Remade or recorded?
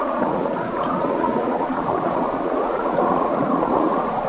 remade